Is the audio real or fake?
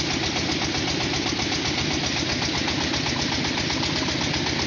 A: real